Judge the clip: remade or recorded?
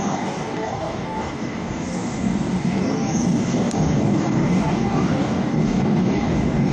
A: remade